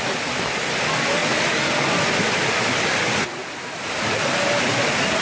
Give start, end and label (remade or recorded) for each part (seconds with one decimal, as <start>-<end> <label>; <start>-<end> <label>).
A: 0.0-1.2 recorded; 1.2-3.6 remade; 3.6-5.2 recorded